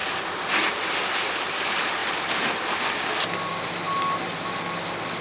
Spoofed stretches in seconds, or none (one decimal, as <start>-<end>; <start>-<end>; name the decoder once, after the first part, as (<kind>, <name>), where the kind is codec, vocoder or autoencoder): none

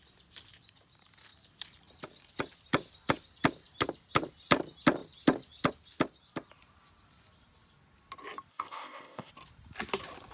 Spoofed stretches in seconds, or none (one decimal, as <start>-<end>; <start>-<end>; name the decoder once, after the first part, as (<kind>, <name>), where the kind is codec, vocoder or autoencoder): 8.5-9.3 (codec, ZipCodec)

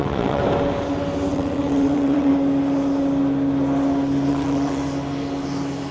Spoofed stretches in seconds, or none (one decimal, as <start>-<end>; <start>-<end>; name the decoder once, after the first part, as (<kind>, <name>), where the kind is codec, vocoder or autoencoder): 0.0-0.4 (vocoder, WaveNeXt); 1.3-2.3; 4.3-4.8

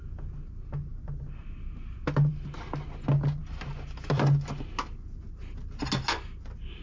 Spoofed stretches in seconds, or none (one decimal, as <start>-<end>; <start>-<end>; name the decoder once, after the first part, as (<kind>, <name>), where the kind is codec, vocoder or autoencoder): none

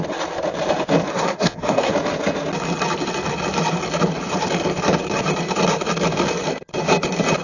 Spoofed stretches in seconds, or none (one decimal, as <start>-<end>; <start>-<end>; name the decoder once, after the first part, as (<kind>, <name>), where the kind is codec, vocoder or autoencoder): 1.1-1.9 (codec, SNAC)

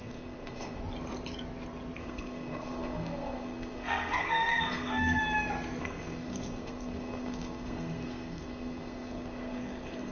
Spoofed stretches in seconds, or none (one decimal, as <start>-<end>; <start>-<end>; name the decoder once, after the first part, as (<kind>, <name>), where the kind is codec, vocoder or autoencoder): 0.0-0.8 (codec, SNAC); 2.0-5.2; 5.8-10.1

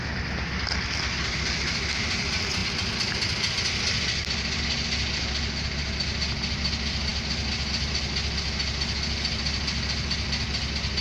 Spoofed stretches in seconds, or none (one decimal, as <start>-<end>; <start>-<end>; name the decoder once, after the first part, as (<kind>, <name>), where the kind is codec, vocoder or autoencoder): none